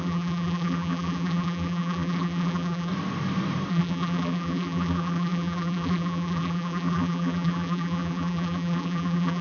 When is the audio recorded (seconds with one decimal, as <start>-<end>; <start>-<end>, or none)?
2.9-3.7